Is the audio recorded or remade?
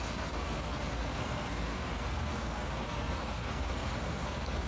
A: remade